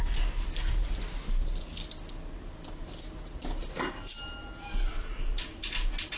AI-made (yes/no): no